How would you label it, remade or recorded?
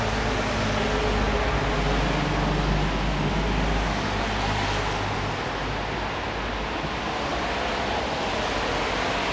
recorded